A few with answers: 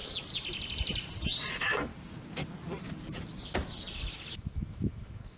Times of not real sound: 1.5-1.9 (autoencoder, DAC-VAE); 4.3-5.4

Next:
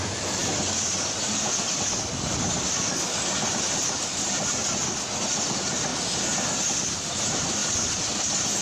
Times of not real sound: none

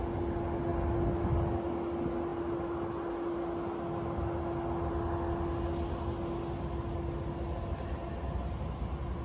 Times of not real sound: none

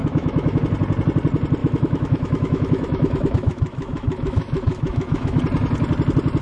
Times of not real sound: 0.0-0.6 (autoencoder, DAC-VAE); 1.6-5.4